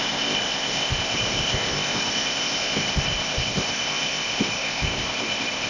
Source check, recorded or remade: remade